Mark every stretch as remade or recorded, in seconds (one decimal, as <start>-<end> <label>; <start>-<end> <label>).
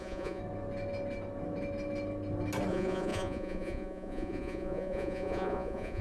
0.0-0.4 remade; 0.4-2.7 recorded; 2.7-6.0 remade